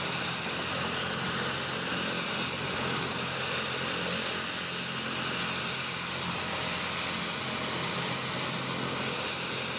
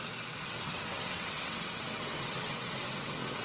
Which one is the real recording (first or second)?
first